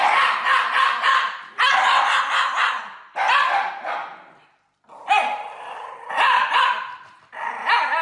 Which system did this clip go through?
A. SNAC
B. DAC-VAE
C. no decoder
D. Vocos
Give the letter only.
C